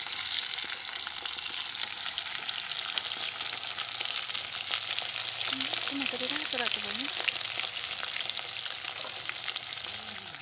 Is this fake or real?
real